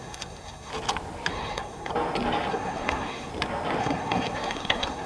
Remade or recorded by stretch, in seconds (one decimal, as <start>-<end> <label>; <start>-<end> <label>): 0.0-0.7 remade; 0.7-1.3 recorded; 1.3-1.9 remade; 1.9-2.5 recorded; 2.5-3.3 remade; 3.3-3.8 recorded; 3.8-5.1 remade